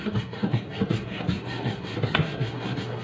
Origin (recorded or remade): remade